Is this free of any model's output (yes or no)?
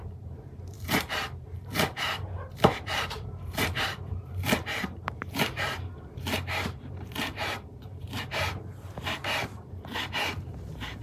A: no